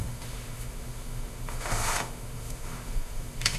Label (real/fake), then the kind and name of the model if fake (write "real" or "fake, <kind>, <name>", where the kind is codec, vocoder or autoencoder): fake, autoencoder, DAC-VAE